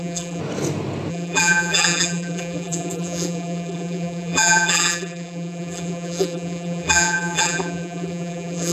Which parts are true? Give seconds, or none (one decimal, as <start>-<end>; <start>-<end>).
0.4-1.1